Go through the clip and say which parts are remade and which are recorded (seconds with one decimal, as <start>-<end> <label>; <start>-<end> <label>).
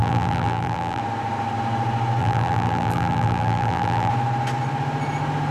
0.0-1.0 remade; 1.0-2.2 recorded; 2.2-4.1 remade; 4.1-5.5 recorded